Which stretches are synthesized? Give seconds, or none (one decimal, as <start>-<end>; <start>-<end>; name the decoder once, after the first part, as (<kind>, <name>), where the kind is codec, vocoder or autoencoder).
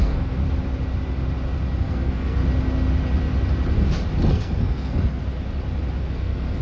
0.0-0.4 (codec, SNAC); 1.8-2.4; 4.3-5.2; 6.0-6.6